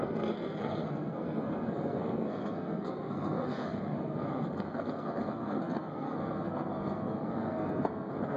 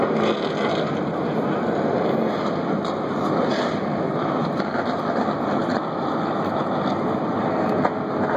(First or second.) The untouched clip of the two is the second